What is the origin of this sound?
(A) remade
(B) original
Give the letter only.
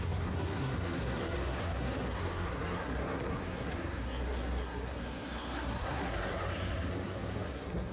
A